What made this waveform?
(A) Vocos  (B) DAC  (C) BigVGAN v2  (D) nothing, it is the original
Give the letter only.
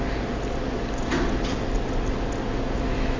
D